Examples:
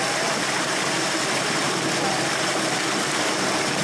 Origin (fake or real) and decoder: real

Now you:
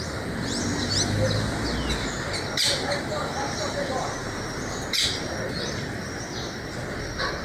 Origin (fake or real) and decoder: real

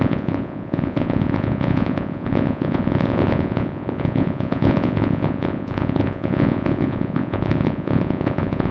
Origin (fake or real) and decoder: fake, vocoder, Vocos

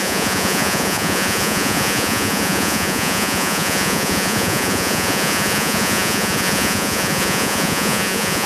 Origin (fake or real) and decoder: fake, vocoder, Vocos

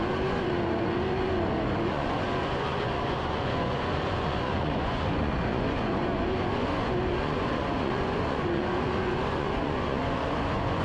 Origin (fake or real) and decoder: fake, vocoder, Vocos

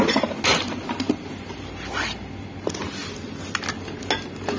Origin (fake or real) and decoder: real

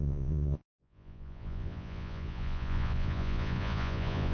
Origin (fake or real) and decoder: fake, vocoder, Vocos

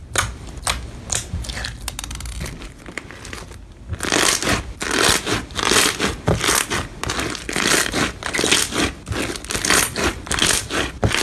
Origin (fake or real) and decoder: real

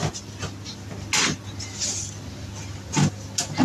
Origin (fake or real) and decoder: real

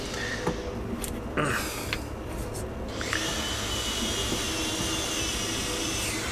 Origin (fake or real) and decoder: real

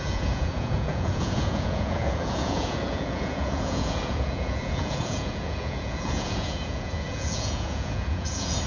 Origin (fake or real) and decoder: fake, vocoder, Vocos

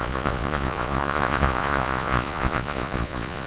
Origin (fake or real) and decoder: fake, vocoder, Vocos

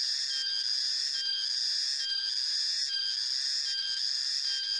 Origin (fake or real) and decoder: real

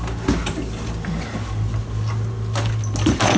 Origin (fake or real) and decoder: real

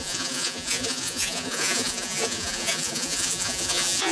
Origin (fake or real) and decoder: fake, vocoder, Vocos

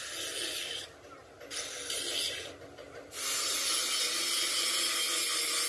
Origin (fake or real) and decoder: real